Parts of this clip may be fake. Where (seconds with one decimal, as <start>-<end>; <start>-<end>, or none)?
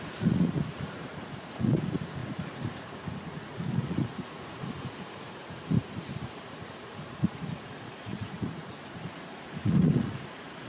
0.0-10.7